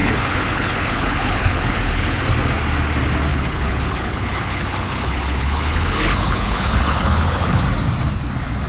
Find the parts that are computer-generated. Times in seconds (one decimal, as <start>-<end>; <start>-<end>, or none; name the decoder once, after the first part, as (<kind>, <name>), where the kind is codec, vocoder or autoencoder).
0.0-2.2 (codec, HILCodec); 3.3-7.6